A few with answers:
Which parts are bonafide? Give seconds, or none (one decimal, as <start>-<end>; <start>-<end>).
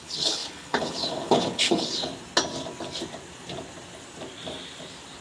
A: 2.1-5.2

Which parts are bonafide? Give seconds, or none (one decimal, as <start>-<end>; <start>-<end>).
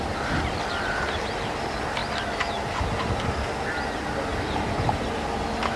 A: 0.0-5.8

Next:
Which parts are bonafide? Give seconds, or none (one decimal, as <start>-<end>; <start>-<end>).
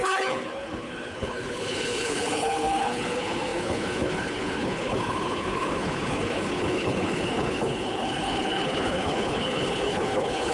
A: none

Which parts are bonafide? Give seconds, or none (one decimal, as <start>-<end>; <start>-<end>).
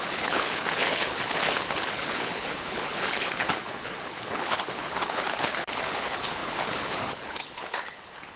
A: none